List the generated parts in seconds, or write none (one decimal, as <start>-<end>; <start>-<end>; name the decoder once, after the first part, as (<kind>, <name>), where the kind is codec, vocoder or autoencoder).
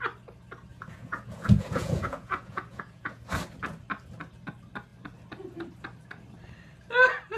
0.7-3.2 (vocoder, Vocos)